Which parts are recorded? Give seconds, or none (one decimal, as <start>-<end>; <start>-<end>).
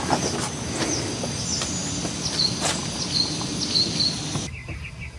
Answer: 0.0-5.2